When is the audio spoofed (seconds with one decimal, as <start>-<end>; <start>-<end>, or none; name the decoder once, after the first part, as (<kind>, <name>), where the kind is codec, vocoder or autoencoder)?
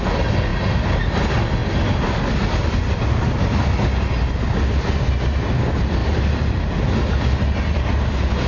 1.6-3.5 (vocoder, BigVGAN v2); 6.0-6.6